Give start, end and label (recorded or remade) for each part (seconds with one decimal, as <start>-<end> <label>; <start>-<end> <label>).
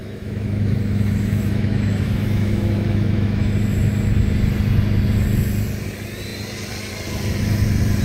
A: 0.0-3.4 remade; 3.4-8.0 recorded